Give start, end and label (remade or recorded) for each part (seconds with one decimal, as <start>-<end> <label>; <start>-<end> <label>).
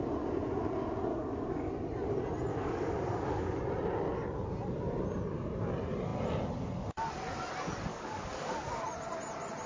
0.0-1.1 recorded; 1.1-1.7 remade; 1.7-2.5 recorded; 2.5-3.6 remade; 3.6-7.9 recorded; 7.9-8.8 remade; 8.8-9.7 recorded